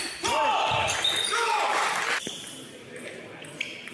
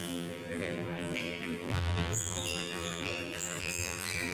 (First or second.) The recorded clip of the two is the first